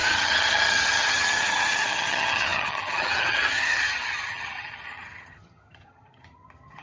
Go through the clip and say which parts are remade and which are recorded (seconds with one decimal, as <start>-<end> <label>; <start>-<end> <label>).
0.0-6.8 remade